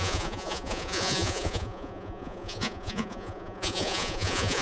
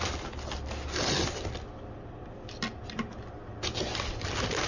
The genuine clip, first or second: second